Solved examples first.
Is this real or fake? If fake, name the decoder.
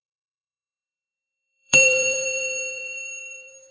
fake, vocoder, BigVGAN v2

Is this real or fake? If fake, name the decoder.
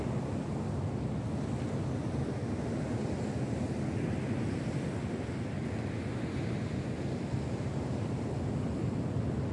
real